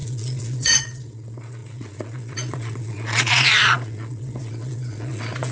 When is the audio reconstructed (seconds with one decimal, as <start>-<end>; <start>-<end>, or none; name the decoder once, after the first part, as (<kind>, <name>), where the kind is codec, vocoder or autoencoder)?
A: 0.0-5.5 (vocoder, Vocos)